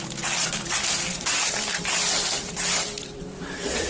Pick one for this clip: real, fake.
fake